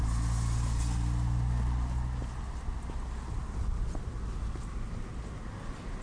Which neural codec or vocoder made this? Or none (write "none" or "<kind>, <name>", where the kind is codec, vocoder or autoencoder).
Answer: none